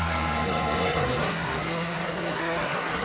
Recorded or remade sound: remade